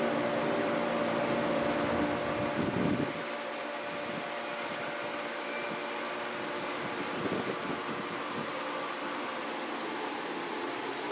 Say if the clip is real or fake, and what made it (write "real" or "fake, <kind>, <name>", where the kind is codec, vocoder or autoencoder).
real